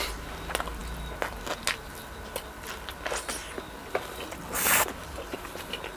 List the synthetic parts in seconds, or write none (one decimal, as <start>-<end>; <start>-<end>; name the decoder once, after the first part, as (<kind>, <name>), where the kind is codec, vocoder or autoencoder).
none